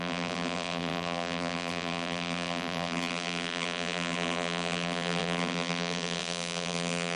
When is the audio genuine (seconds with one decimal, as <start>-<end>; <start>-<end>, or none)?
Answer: none

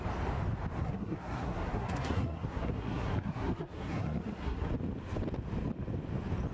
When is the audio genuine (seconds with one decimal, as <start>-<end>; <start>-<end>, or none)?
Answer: 0.0-0.8; 4.7-6.5

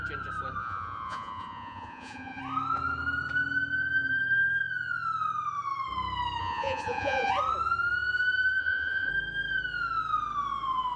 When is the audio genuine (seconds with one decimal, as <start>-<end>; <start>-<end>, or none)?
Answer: 0.0-0.6; 2.4-6.4; 7.3-8.6; 9.1-11.0

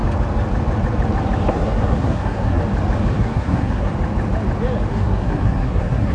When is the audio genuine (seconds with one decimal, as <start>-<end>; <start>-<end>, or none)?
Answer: 0.0-1.5; 2.6-3.2; 3.9-4.9

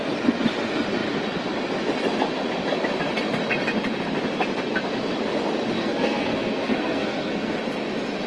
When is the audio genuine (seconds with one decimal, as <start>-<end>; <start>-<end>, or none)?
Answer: 0.0-5.8; 7.6-8.3